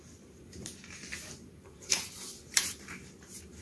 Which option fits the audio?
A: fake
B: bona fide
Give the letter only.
A